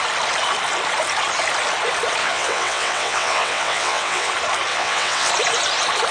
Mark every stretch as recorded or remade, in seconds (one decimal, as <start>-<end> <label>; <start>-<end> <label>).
0.0-2.2 recorded; 2.2-4.3 remade; 4.3-4.7 recorded; 4.7-5.3 remade; 5.3-6.1 recorded